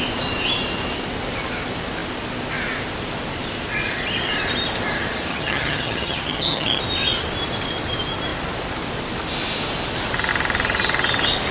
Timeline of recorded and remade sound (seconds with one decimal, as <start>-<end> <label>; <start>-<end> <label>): 0.0-5.3 recorded; 5.3-6.8 remade; 6.8-11.5 recorded

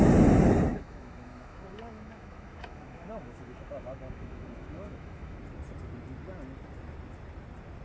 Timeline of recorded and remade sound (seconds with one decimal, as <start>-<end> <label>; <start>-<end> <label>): 0.0-0.7 recorded; 0.7-5.4 remade; 5.4-7.8 recorded

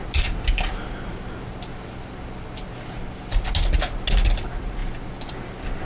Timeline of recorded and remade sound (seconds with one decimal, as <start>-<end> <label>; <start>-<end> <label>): 0.0-5.9 recorded

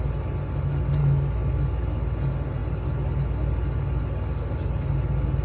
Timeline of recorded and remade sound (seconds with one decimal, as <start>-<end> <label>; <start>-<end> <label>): 0.0-1.0 recorded; 1.0-1.5 remade; 1.5-5.4 recorded

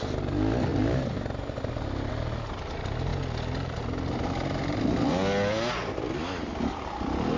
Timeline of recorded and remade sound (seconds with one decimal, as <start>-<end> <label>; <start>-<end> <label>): 0.0-7.4 recorded

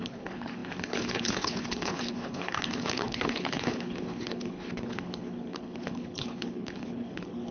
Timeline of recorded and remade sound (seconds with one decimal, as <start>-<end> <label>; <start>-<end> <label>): 0.0-7.5 remade